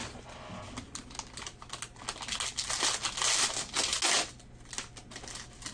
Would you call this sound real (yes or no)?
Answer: yes